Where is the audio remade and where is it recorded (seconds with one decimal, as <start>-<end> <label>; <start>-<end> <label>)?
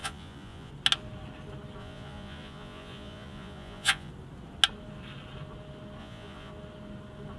0.0-0.7 remade; 0.7-1.8 recorded; 1.8-4.1 remade; 4.1-6.0 recorded; 6.0-6.5 remade; 6.5-7.4 recorded